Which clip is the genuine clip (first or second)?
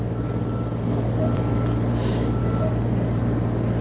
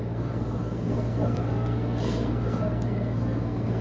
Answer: first